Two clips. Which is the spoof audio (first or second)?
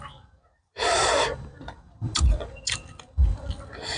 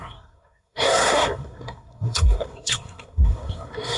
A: second